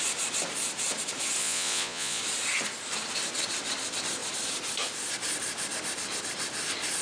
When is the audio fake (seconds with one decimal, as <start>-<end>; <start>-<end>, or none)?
1.4-2.2